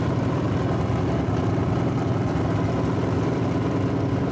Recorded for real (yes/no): yes